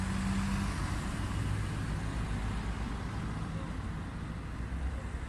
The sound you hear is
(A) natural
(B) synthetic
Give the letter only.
A